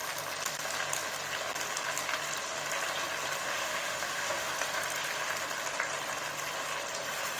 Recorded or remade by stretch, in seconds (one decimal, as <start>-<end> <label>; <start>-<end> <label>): 0.0-3.4 recorded; 3.4-4.5 remade; 4.5-7.4 recorded